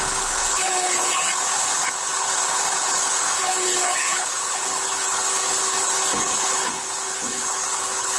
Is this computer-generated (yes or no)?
yes